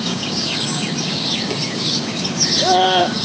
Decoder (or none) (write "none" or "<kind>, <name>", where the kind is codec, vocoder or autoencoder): codec, DAC